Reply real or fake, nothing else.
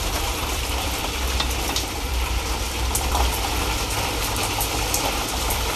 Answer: fake